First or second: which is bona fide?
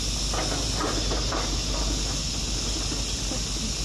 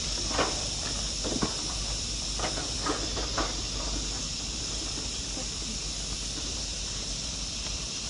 first